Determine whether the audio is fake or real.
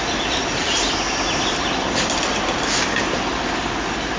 real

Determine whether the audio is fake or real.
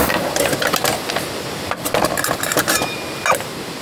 real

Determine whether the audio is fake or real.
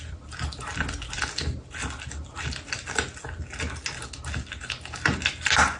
real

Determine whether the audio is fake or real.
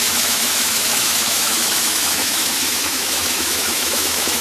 fake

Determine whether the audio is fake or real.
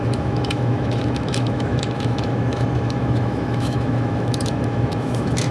fake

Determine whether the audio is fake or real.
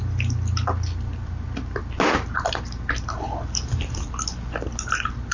real